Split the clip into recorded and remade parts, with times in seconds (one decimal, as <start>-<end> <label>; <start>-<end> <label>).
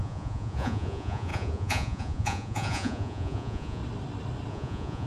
0.0-3.8 remade; 3.8-4.5 recorded; 4.5-5.1 remade